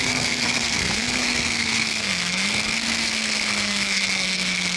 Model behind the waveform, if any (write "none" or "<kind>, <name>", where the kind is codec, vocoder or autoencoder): codec, SNAC